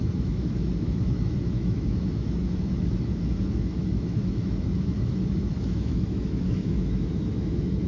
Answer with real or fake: fake